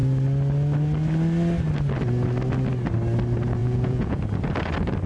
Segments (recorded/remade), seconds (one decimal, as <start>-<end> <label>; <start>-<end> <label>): 0.0-3.6 recorded; 3.6-4.2 remade; 4.2-5.1 recorded